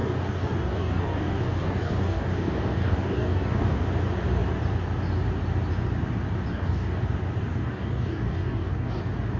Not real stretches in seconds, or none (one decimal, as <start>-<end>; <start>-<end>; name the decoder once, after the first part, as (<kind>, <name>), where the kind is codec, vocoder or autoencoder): 0.0-3.8 (codec, DAC); 6.5-7.0; 7.5-9.0